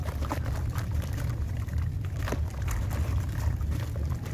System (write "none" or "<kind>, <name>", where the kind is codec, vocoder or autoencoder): vocoder, BigVGAN v2